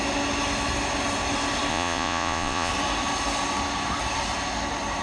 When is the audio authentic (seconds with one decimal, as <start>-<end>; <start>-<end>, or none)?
0.0-1.7; 2.7-5.0